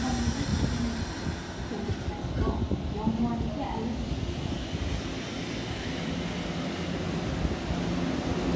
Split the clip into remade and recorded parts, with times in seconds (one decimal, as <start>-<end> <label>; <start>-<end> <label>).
0.0-8.6 recorded